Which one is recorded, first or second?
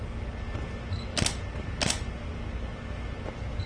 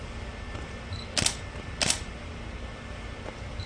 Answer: first